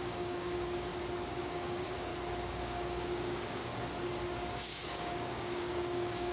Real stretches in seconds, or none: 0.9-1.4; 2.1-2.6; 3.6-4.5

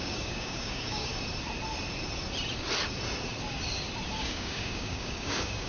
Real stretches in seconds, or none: 1.1-4.2

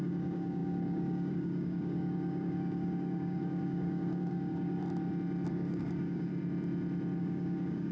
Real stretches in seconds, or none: 4.8-5.5; 6.3-7.2

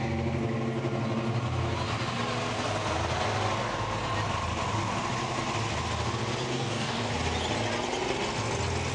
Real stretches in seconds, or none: 0.0-6.5; 7.1-8.9